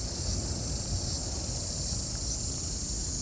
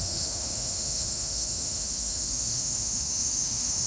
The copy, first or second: second